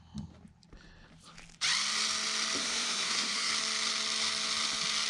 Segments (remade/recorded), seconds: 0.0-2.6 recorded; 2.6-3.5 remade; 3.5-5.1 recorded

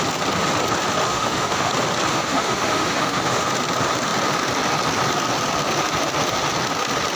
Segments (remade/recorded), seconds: 0.0-1.1 recorded; 1.1-1.7 remade; 1.7-2.1 recorded; 2.1-3.5 remade; 3.5-7.2 recorded

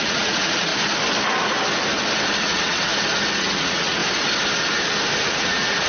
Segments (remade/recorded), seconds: 0.0-0.7 remade; 0.7-2.4 recorded; 2.4-2.9 remade; 2.9-3.4 recorded; 3.4-4.0 remade; 4.0-5.2 recorded; 5.2-5.9 remade

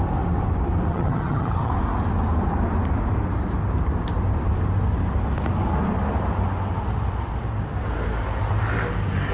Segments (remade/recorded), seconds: 0.0-0.9 recorded; 0.9-1.7 remade; 1.7-9.3 recorded